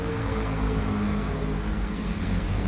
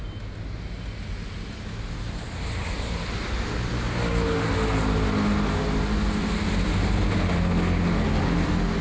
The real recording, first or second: second